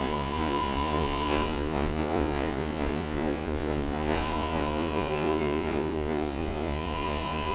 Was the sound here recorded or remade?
remade